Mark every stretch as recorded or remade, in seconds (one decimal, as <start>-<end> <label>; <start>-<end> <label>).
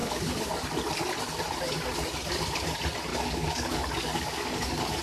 0.0-0.5 remade; 0.5-3.1 recorded; 3.1-5.0 remade